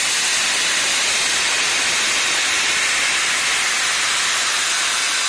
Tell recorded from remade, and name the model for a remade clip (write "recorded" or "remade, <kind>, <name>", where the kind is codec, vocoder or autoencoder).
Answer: recorded